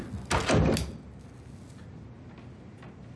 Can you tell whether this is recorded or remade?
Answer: recorded